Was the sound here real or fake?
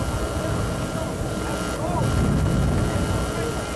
real